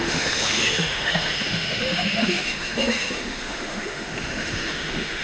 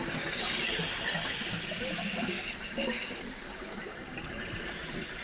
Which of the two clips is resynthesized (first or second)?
first